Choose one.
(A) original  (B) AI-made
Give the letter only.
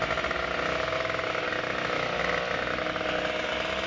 A